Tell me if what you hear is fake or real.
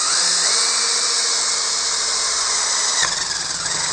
real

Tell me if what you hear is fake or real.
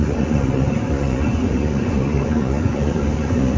fake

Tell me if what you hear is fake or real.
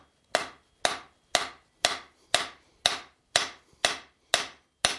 real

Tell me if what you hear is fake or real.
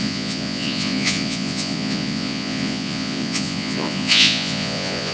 fake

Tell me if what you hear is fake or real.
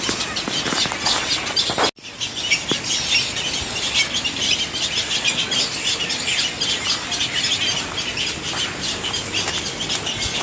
real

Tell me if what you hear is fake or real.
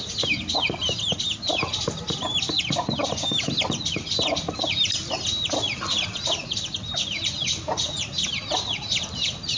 real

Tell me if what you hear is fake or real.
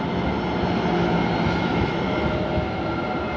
real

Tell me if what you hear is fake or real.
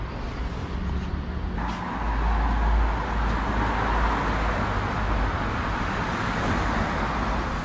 real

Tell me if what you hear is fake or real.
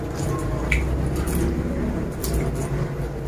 real